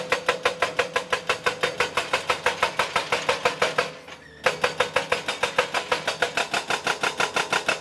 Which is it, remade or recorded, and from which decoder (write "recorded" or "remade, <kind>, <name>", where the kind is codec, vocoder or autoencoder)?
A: recorded